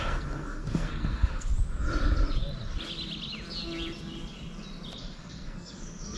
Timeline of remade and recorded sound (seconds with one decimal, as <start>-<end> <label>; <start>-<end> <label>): 0.0-1.5 remade; 1.5-5.0 recorded; 5.0-6.2 remade

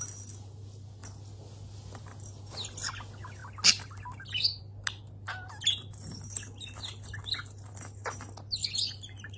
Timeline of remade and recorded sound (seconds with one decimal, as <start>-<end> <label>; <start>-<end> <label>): 0.0-9.4 recorded

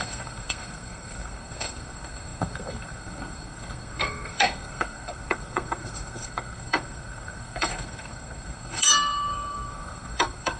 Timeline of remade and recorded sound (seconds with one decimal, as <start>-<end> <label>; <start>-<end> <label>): 0.0-10.6 remade

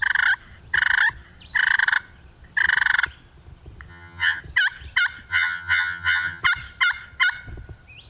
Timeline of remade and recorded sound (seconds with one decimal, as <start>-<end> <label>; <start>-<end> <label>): 0.0-3.9 recorded; 3.9-4.4 remade; 4.4-5.3 recorded; 5.3-6.4 remade; 6.4-8.1 recorded

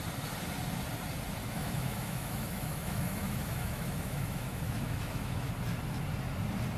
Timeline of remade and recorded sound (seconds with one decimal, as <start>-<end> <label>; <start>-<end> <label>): 0.0-1.4 recorded; 1.4-5.5 remade; 5.5-6.8 recorded

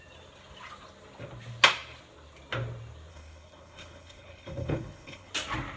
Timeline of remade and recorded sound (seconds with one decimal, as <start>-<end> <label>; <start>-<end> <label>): 0.0-3.1 recorded; 3.1-5.3 remade; 5.3-5.8 recorded

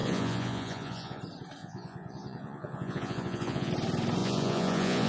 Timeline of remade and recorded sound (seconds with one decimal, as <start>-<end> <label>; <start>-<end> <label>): 0.0-1.2 remade; 1.2-1.6 recorded; 1.6-3.7 remade; 3.7-4.2 recorded; 4.2-5.1 remade